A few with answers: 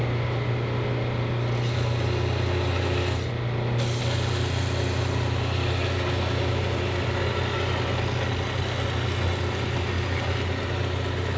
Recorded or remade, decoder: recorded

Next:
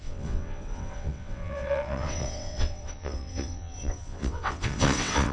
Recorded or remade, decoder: remade, vocoder, WaveNeXt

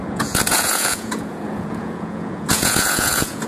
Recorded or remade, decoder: remade, vocoder, Vocos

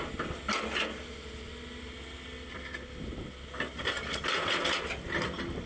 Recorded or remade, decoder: recorded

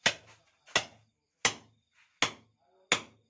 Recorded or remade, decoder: recorded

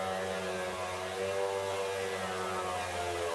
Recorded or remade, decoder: recorded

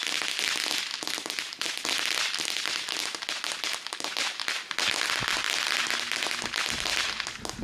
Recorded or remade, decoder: recorded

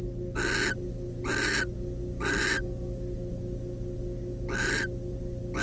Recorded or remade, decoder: recorded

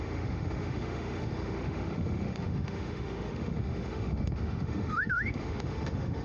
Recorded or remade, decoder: remade, autoencoder, DAC-VAE